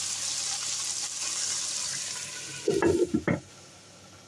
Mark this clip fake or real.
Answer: real